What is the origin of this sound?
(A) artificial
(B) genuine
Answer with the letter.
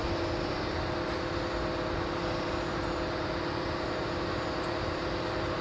B